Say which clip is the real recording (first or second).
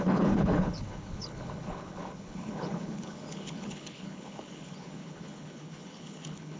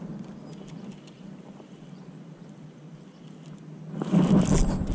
second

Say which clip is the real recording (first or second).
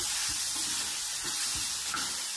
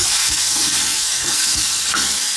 first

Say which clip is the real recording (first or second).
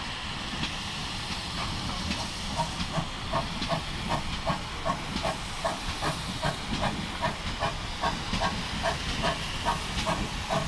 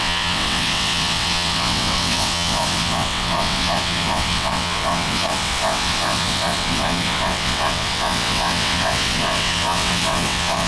first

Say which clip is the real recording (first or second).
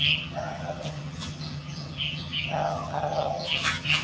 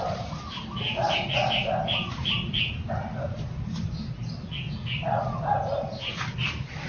second